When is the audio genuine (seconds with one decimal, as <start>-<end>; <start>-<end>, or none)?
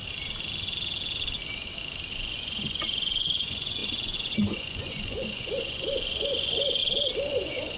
0.0-2.1; 6.8-7.3